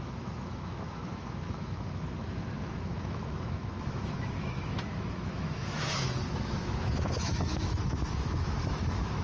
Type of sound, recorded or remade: remade